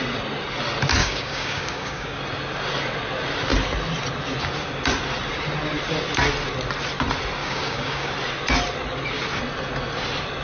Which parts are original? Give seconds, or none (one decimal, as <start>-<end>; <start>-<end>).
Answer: 0.0-1.0; 2.2-7.4; 8.1-10.4